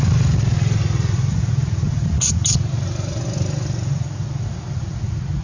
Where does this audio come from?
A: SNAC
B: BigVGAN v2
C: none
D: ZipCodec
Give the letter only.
C